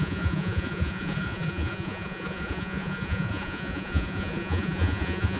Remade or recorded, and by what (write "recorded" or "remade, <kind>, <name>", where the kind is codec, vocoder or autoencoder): remade, vocoder, Vocos